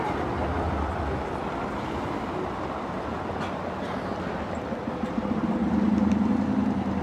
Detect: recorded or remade recorded